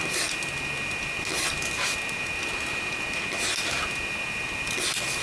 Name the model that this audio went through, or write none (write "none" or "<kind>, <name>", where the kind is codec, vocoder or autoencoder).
none